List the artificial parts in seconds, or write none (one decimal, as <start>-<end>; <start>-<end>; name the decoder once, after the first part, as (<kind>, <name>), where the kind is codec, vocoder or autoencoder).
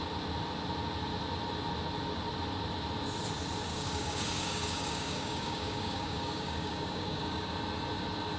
3.7-7.5 (codec, DAC)